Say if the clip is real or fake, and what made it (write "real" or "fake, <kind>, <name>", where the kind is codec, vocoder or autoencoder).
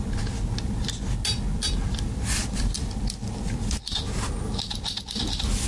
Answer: real